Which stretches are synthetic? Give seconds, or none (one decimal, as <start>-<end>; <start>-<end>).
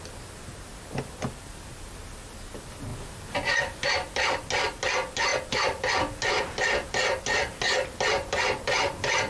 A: none